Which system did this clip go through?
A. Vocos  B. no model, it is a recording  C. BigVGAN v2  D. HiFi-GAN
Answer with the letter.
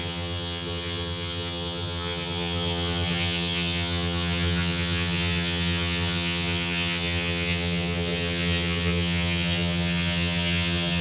D